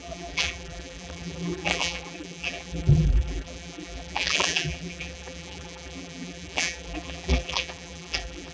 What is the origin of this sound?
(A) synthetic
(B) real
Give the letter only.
A